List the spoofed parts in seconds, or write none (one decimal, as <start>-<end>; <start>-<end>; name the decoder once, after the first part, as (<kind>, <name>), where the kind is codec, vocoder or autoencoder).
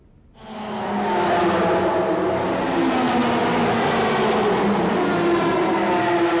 none